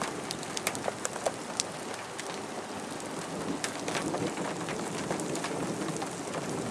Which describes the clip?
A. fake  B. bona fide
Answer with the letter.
B